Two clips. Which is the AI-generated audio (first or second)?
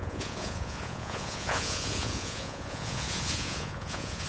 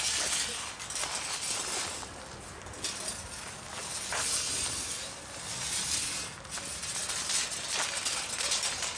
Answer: first